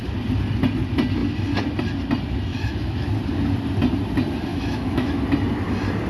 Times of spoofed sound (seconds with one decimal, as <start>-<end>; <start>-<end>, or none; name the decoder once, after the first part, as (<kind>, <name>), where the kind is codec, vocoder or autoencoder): 2.5-3.1 (autoencoder, DAC-VAE); 4.5-5.2